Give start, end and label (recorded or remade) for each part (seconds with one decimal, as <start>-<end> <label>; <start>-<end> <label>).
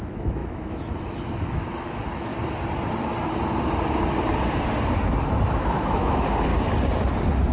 0.0-2.3 remade; 2.3-5.1 recorded; 5.1-6.5 remade; 6.5-7.5 recorded